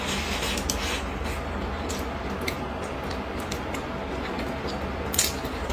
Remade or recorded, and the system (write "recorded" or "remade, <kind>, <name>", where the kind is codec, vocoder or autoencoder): recorded